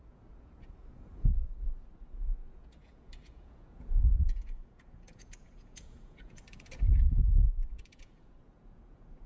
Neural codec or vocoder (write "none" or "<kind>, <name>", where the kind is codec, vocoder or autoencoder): vocoder, Vocos